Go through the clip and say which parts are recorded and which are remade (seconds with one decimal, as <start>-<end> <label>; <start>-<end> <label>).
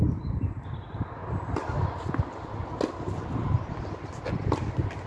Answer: 0.0-5.1 recorded